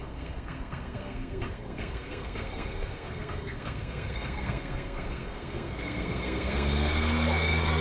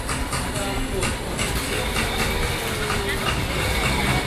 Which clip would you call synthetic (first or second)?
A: first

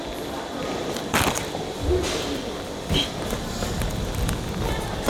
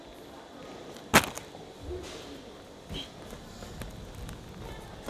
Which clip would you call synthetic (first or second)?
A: first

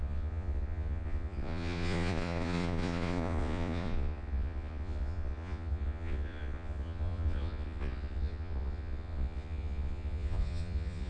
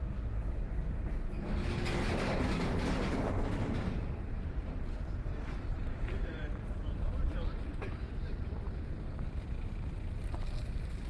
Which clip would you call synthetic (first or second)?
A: first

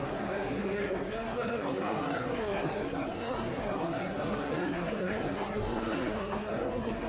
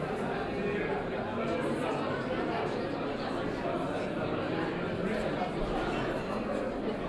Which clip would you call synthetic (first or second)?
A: first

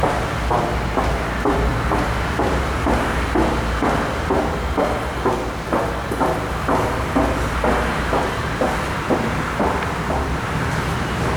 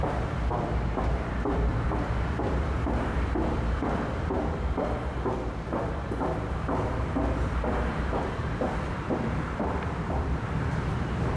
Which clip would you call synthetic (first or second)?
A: second